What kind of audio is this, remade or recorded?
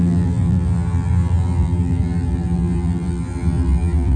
remade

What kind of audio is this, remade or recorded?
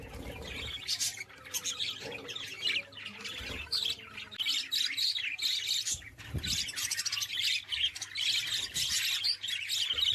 recorded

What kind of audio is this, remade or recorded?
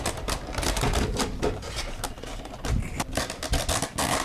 recorded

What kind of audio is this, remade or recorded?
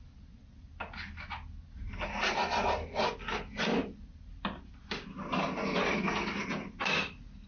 recorded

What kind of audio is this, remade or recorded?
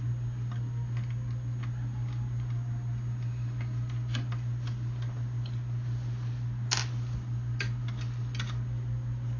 recorded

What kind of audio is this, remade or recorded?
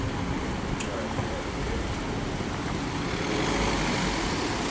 recorded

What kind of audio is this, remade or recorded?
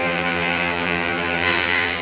remade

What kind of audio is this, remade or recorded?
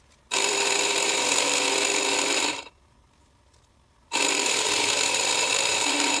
remade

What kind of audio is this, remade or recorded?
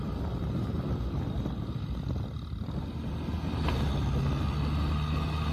recorded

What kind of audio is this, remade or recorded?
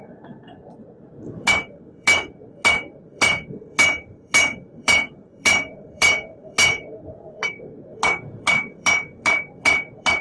remade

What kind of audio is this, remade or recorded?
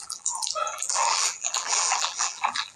remade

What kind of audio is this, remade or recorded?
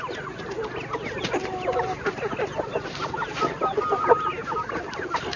recorded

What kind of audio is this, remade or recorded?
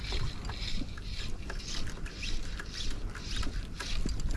recorded